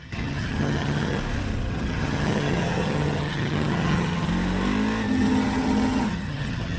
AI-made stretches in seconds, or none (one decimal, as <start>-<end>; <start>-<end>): 0.0-1.2; 1.7-4.3; 5.1-6.8